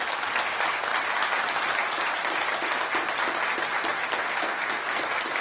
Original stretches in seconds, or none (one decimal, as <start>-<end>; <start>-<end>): 0.0-4.4; 5.0-5.4